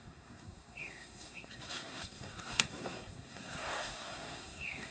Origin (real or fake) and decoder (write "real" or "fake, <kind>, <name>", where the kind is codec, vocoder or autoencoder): fake, codec, SNAC